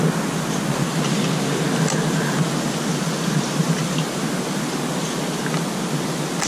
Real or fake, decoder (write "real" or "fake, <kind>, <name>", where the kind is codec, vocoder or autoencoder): real